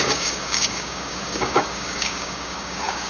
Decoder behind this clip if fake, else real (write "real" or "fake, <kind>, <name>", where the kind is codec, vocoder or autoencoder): fake, codec, DAC